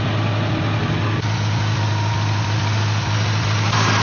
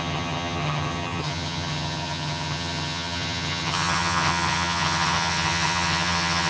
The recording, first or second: first